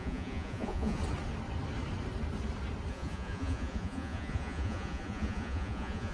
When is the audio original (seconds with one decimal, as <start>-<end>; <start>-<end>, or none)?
1.0-2.9